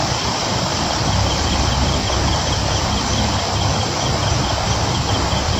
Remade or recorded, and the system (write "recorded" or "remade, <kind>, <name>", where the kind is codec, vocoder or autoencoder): remade, vocoder, BigVGAN v2